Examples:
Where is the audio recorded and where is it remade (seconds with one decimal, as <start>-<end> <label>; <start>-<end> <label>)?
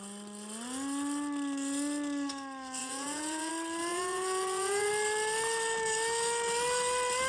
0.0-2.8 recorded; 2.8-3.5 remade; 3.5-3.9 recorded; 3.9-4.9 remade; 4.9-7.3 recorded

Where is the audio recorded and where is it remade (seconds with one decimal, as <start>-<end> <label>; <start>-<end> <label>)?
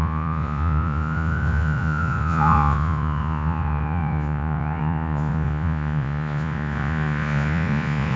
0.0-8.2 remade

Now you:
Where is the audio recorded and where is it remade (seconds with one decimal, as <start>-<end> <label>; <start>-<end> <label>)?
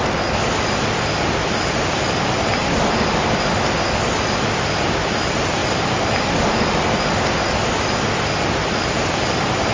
0.0-9.7 recorded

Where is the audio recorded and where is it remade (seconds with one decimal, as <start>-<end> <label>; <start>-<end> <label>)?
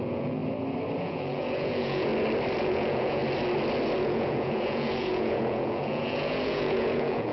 0.0-0.4 remade; 0.4-1.0 recorded; 1.0-2.1 remade; 2.1-2.6 recorded; 2.6-3.2 remade; 3.2-4.0 recorded; 4.0-7.3 remade